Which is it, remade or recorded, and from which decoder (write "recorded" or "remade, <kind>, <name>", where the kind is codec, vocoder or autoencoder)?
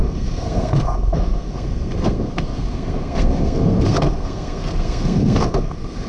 remade, codec, SNAC